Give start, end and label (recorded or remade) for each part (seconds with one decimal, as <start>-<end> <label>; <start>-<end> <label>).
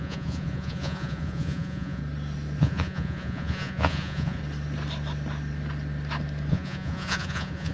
0.0-2.0 remade; 2.0-2.6 recorded; 2.6-4.4 remade; 4.4-6.5 recorded; 6.5-7.7 remade